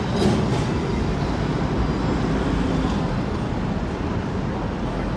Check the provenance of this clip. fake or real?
real